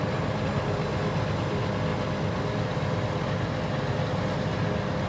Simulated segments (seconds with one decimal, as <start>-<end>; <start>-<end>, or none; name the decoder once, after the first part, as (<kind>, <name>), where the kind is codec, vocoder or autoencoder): none